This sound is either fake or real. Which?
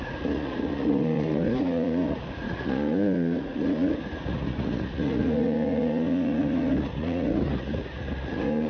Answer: fake